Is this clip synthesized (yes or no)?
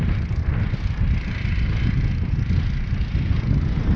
no